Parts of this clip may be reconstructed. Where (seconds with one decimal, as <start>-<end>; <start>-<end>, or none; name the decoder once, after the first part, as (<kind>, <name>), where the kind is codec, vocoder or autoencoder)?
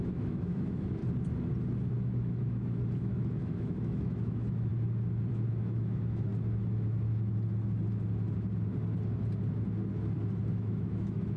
0.0-1.0 (autoencoder, DAC-VAE); 1.9-4.7; 5.3-6.3; 10.5-11.4